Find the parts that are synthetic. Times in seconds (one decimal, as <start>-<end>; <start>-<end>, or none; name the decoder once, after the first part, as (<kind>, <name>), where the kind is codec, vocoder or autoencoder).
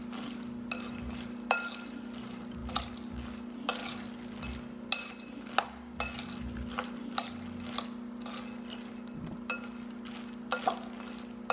none